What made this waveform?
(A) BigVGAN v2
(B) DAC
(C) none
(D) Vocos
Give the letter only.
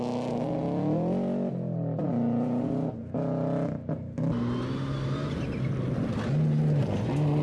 C